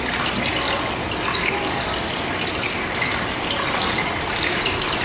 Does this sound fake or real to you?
real